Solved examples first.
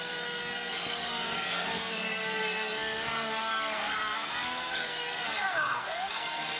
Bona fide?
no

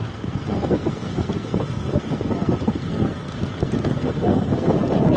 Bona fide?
no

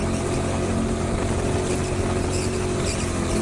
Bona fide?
yes